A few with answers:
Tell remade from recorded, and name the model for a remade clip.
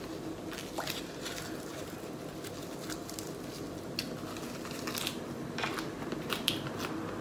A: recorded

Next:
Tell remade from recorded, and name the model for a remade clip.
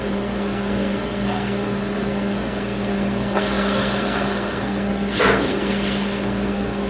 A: remade, codec, SNAC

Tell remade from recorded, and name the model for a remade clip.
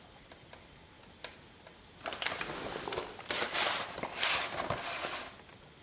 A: recorded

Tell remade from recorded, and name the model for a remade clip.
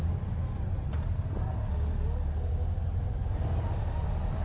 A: recorded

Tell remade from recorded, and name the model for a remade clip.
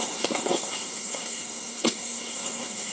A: remade, codec, SNAC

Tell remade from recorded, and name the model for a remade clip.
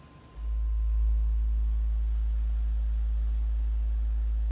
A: recorded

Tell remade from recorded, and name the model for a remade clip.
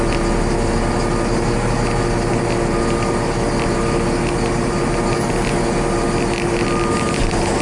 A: recorded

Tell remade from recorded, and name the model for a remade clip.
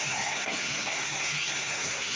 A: remade, codec, SNAC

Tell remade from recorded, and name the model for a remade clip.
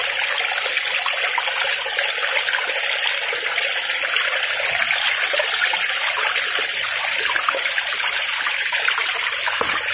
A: recorded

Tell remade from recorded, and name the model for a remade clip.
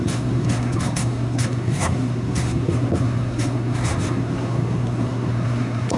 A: remade, codec, SNAC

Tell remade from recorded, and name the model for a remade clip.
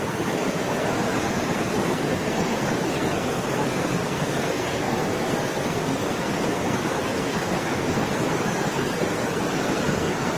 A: remade, codec, SNAC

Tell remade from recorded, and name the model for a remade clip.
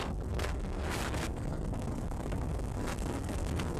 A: remade, codec, SNAC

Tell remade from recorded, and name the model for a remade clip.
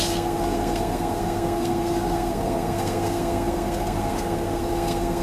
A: remade, codec, SNAC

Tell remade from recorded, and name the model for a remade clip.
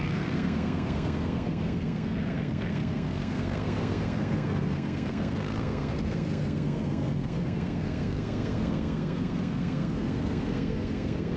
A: remade, codec, SNAC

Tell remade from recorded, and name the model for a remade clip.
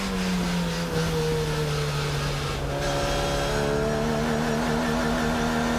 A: recorded